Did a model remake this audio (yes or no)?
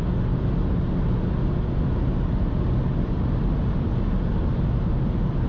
no